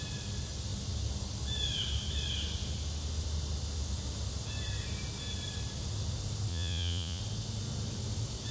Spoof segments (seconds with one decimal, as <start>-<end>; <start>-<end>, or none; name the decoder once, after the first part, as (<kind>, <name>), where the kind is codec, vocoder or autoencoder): 6.5-7.2 (vocoder, Vocos)